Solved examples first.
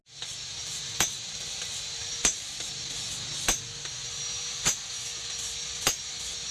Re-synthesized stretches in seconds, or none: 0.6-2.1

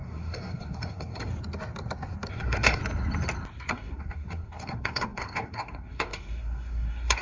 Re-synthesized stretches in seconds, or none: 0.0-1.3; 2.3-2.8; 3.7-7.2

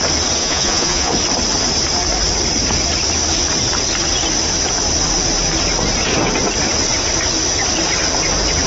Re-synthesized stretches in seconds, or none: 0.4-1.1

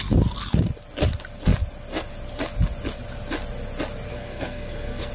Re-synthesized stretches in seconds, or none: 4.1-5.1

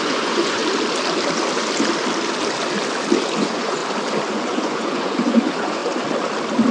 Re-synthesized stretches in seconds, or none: 0.0-0.6; 3.4-3.8; 4.3-5.8

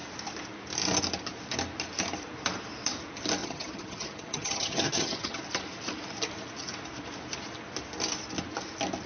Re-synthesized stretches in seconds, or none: 3.4-5.4

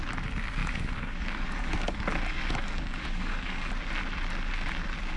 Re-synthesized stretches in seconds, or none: 0.6-3.7

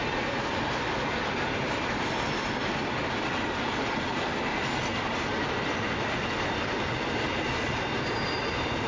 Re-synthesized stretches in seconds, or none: none